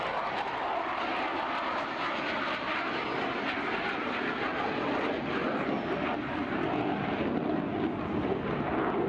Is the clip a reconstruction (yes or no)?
no